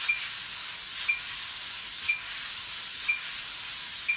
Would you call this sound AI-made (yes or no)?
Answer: no